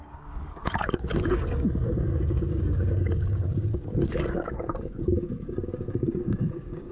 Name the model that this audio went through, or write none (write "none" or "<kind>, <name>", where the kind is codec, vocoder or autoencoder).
codec, DAC